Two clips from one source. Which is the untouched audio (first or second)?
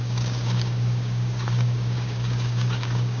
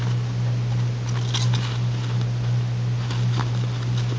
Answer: second